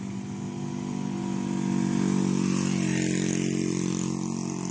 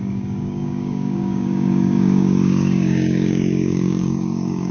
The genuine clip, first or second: first